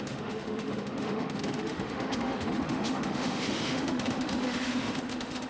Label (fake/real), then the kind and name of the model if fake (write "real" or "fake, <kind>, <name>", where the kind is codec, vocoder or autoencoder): fake, autoencoder, DAC-VAE